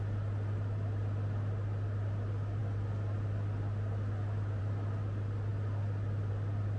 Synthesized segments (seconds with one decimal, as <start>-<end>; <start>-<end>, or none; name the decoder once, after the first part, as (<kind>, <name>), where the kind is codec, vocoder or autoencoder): none